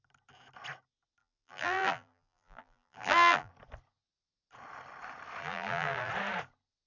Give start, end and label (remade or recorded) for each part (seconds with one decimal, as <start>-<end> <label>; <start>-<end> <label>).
0.0-1.2 recorded; 1.2-3.5 remade; 3.5-5.4 recorded; 5.4-6.1 remade; 6.1-6.9 recorded